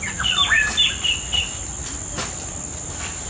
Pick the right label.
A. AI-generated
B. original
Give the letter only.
B